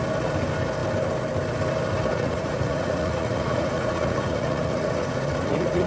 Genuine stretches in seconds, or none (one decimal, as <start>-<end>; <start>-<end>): 0.0-2.1